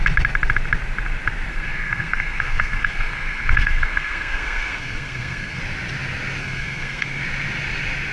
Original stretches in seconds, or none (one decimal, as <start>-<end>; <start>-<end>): 0.0-1.5; 5.6-6.4; 7.2-8.1